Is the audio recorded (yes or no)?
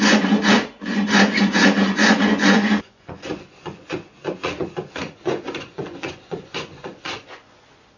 no